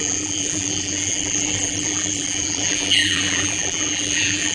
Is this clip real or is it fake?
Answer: fake